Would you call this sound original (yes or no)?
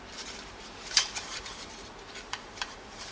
no